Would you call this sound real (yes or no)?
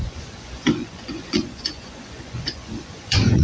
no